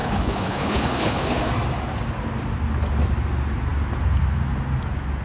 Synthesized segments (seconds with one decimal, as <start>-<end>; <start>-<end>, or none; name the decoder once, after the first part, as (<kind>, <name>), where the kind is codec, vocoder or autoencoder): 0.0-1.5 (codec, HILCodec)